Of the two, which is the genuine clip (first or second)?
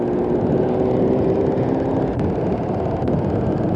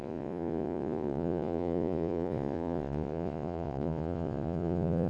first